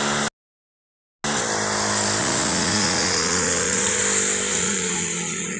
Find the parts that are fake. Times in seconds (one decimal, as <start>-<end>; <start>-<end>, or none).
2.2-4.0; 4.5-5.6